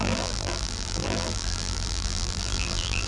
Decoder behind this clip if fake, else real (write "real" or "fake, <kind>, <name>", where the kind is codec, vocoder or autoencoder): fake, vocoder, BigVGAN v2